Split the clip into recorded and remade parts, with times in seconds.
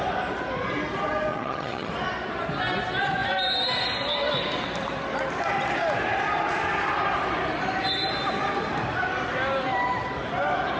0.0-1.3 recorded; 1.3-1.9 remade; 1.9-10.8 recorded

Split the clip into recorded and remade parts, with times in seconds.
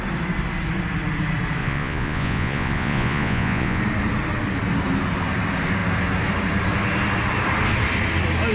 0.0-1.6 recorded; 1.6-3.8 remade; 3.8-8.5 recorded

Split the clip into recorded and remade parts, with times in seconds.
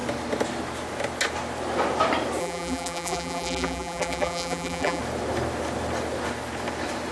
0.0-2.4 recorded; 2.4-5.0 remade; 5.0-7.1 recorded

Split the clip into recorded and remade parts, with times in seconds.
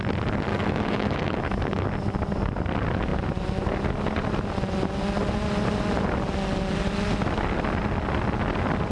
0.0-0.5 recorded; 0.5-1.8 remade; 1.8-8.9 recorded